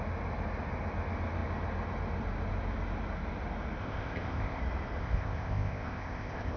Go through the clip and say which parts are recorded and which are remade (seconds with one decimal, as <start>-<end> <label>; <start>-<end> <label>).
0.0-3.8 recorded; 3.8-4.6 remade; 4.6-5.0 recorded; 5.0-6.6 remade